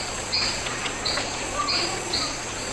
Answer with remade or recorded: remade